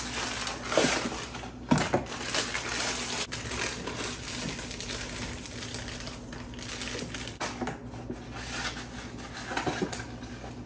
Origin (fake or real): real